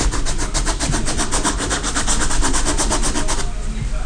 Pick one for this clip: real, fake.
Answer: real